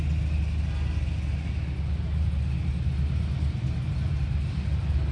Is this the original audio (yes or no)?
yes